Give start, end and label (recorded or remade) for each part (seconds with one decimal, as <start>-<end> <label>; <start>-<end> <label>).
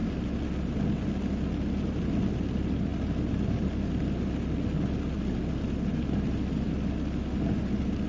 0.0-8.1 recorded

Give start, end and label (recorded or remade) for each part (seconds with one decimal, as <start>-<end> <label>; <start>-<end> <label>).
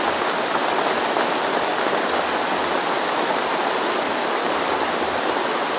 0.0-5.8 recorded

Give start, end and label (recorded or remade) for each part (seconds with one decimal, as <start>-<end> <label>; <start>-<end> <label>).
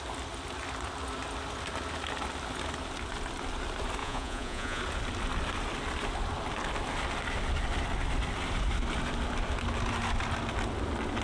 0.0-4.0 recorded; 4.0-4.8 remade; 4.8-11.2 recorded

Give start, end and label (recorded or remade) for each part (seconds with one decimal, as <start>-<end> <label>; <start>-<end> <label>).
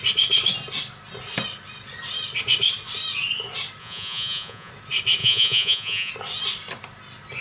0.0-3.8 recorded; 3.8-4.7 remade; 4.7-5.2 recorded; 5.2-6.1 remade; 6.1-7.4 recorded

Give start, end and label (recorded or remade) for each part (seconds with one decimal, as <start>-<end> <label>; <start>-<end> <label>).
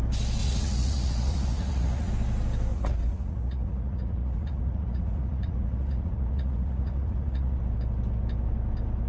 0.0-0.4 recorded; 0.4-2.1 remade; 2.1-2.7 recorded; 2.7-7.6 remade; 7.6-9.1 recorded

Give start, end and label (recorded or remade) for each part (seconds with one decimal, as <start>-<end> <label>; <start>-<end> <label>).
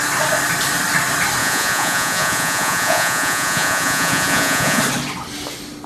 0.0-1.4 recorded; 1.4-4.8 remade; 4.8-5.9 recorded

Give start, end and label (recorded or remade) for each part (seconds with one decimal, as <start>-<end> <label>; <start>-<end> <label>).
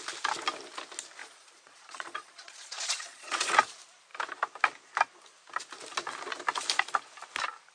0.0-1.2 recorded; 1.2-3.5 remade; 3.5-7.7 recorded